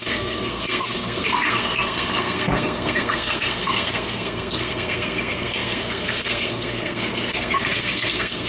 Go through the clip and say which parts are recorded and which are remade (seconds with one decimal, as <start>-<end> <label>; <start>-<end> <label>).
0.0-8.5 remade